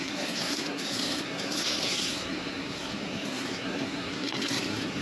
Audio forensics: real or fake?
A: fake